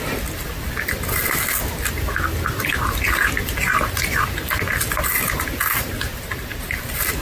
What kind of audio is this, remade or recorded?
recorded